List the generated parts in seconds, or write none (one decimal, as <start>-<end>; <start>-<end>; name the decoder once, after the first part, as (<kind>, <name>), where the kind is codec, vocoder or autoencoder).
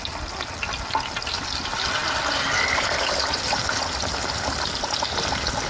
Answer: 2.0-3.8 (vocoder, BigVGAN v2)